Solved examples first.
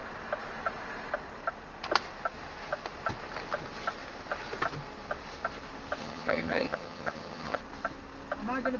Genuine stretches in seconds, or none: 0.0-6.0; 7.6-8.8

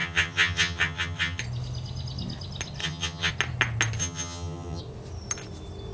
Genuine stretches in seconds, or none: 1.4-2.8; 3.3-4.0; 4.8-5.9

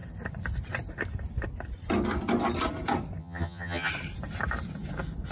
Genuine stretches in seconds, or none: 0.0-3.2; 3.9-5.3